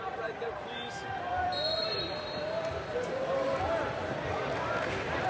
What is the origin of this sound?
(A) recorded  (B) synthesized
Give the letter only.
A